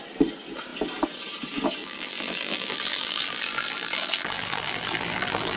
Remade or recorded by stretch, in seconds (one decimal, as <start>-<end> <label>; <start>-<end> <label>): 0.0-1.8 recorded; 1.8-5.6 remade

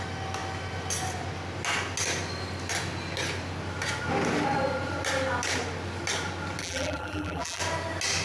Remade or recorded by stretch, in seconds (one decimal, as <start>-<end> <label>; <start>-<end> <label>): 0.0-6.6 recorded; 6.6-7.6 remade; 7.6-8.2 recorded

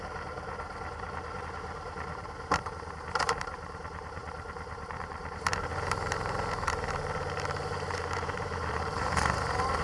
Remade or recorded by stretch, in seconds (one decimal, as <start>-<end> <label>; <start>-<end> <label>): 0.0-9.8 remade

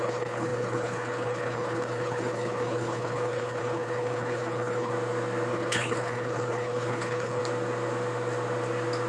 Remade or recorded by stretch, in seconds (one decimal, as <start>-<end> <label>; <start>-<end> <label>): 0.0-4.9 remade; 4.9-5.5 recorded; 5.5-7.4 remade; 7.4-9.1 recorded